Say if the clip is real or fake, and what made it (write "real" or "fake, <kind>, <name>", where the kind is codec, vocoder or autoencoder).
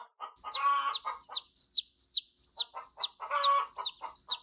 real